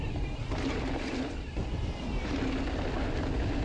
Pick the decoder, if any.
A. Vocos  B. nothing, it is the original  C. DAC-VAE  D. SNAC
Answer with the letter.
B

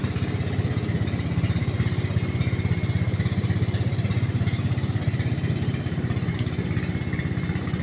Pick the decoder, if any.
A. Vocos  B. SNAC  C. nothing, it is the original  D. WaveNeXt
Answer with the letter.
C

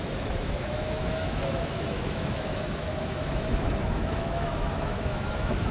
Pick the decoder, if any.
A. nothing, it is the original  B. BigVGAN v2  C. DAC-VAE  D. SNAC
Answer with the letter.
C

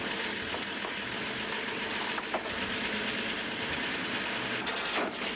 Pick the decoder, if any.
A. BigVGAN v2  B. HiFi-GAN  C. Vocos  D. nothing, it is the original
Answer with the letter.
D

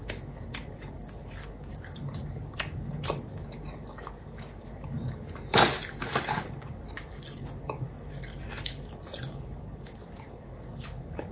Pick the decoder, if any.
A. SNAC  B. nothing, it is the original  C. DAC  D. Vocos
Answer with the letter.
C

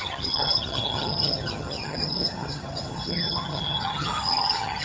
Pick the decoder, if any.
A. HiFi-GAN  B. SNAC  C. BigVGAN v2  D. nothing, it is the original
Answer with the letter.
A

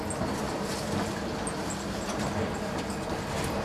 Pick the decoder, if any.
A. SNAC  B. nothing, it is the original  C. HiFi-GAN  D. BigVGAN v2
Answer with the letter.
B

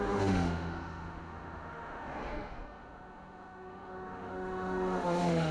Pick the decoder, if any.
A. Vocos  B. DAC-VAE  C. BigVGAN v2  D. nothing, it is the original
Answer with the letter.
B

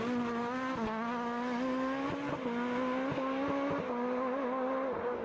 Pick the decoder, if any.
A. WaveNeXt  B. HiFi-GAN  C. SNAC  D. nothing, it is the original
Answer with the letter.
D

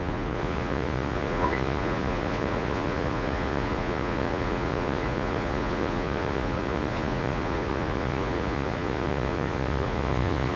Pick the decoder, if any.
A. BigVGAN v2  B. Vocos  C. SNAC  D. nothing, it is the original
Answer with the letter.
B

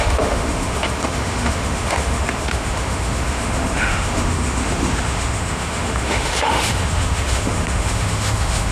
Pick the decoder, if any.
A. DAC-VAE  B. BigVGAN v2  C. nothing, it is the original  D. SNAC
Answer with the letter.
A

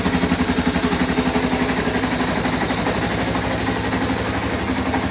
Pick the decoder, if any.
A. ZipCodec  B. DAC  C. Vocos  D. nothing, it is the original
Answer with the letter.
D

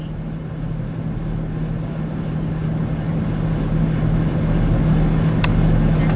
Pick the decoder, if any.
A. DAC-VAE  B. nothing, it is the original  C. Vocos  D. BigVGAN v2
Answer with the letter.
B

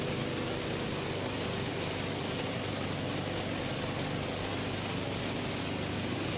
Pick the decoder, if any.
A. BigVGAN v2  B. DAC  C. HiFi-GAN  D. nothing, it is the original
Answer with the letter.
D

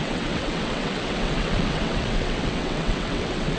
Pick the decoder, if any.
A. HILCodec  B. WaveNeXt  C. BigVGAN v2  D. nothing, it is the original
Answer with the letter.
B